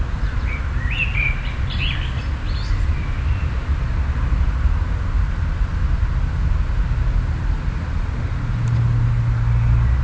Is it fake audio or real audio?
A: real